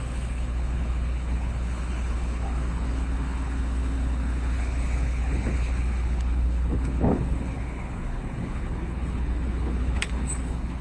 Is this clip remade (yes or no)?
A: yes